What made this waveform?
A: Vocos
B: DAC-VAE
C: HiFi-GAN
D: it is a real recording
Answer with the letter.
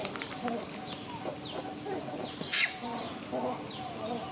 D